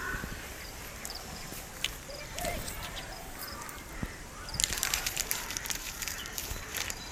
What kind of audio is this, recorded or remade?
remade